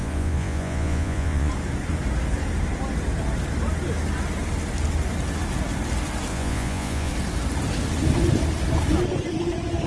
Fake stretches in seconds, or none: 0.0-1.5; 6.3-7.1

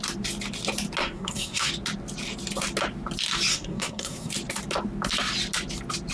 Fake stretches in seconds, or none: 1.0-1.7; 3.5-4.3